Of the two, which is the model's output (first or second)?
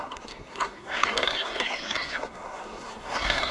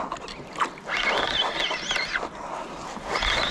first